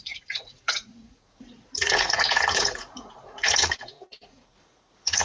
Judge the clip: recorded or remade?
remade